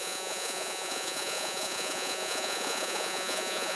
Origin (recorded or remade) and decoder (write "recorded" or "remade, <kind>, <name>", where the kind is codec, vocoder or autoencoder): remade, vocoder, Vocos